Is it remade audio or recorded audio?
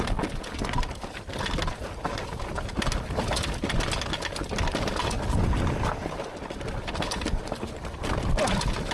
recorded